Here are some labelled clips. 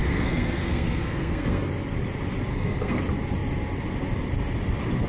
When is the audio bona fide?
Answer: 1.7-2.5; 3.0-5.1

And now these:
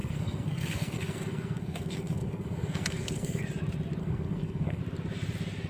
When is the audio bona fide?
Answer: 3.4-4.0; 4.8-5.7

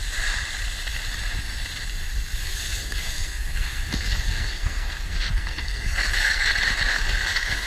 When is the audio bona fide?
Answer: 0.0-2.4; 6.5-6.9